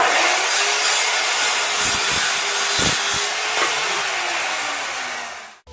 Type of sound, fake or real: real